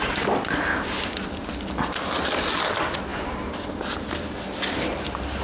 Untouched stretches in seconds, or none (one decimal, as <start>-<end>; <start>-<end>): 0.0-5.4